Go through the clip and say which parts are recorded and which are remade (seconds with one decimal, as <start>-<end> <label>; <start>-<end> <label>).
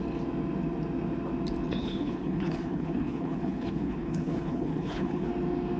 0.0-1.8 recorded; 1.8-5.3 remade; 5.3-5.8 recorded